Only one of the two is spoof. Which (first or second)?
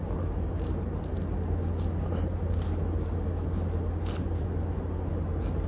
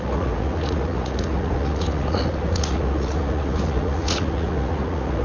second